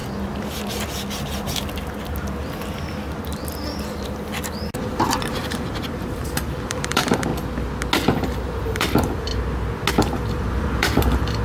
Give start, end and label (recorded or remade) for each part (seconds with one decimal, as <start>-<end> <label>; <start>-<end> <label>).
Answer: 0.0-4.8 recorded; 4.8-7.3 remade; 7.3-8.6 recorded; 8.6-9.3 remade; 9.3-9.9 recorded; 9.9-11.4 remade